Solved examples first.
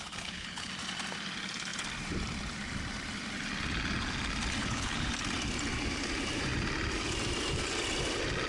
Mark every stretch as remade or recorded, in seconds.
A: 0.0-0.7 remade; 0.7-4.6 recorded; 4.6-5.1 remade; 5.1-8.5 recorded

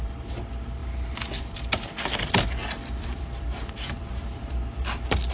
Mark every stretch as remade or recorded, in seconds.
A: 0.0-2.6 recorded; 2.6-5.3 remade

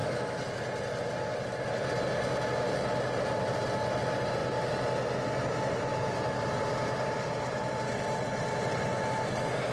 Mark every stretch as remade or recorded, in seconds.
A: 0.0-9.7 recorded

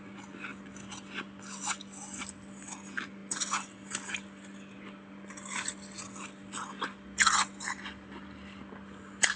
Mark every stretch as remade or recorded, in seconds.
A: 0.0-9.4 recorded

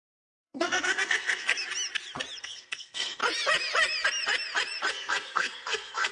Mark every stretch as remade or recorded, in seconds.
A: 0.0-1.5 remade; 1.5-2.4 recorded; 2.4-3.2 remade; 3.2-4.9 recorded; 4.9-6.1 remade